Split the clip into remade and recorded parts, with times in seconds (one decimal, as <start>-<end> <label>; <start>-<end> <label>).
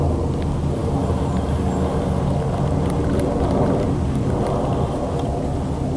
0.0-6.0 recorded